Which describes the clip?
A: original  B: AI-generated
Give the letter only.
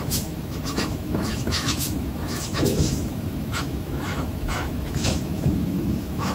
B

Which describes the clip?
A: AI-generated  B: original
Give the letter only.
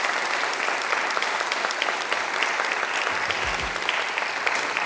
B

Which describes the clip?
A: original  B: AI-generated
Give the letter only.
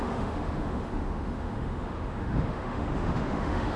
B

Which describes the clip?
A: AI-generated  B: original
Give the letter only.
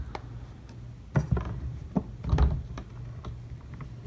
B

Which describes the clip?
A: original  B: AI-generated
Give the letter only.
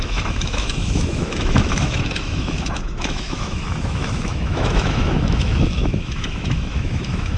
B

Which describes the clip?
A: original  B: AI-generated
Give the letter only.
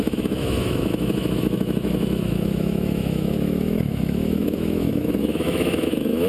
B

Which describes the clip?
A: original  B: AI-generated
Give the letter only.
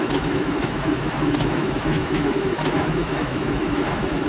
B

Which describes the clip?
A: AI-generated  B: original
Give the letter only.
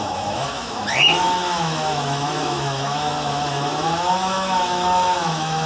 A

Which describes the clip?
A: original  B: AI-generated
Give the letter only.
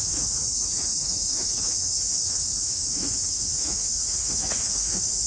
B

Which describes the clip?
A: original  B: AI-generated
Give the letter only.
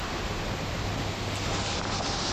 A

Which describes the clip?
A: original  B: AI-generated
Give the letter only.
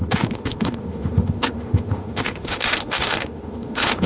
B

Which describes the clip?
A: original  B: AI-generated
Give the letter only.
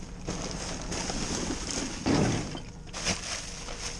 A